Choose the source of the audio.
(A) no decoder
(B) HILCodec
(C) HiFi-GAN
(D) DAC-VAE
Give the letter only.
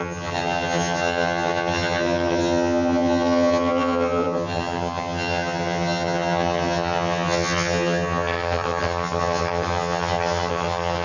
C